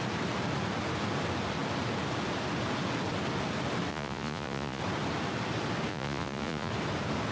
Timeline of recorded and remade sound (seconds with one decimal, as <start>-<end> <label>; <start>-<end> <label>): 0.0-3.9 recorded; 3.9-4.8 remade; 4.8-5.9 recorded; 5.9-6.7 remade; 6.7-7.3 recorded